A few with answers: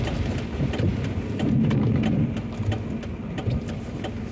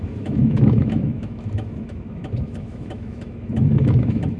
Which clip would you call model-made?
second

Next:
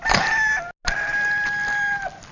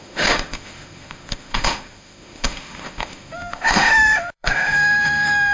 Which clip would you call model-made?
second